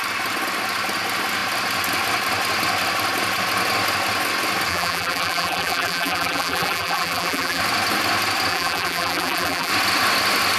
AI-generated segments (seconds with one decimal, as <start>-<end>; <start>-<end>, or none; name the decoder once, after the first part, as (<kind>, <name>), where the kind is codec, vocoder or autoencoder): 4.7-7.6 (vocoder, BigVGAN v2); 8.5-9.7